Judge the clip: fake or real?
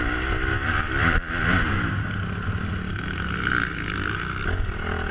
real